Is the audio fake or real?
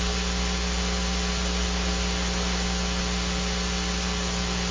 real